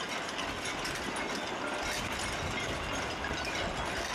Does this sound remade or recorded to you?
recorded